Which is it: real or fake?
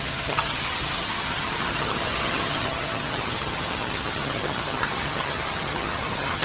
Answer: fake